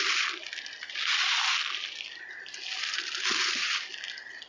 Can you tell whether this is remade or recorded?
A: recorded